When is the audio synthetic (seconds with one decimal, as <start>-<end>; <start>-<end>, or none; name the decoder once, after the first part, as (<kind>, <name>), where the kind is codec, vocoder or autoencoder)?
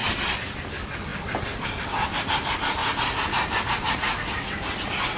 none